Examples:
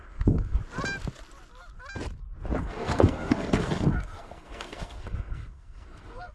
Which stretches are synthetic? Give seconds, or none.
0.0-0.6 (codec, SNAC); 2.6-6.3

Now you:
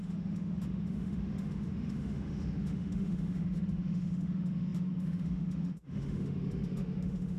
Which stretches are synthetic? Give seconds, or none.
0.0-7.4 (autoencoder, DAC-VAE)

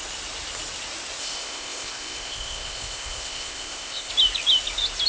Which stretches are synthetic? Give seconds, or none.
1.2-4.1 (codec, ZipCodec)

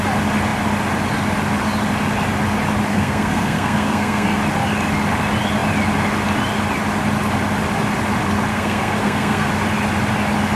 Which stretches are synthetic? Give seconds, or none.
2.9-4.4 (codec, SNAC); 8.5-9.5

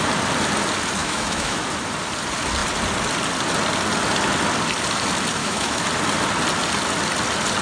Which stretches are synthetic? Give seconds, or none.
1.0-1.6 (autoencoder, DAC-VAE); 5.4-5.9